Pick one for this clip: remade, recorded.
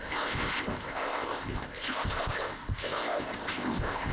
remade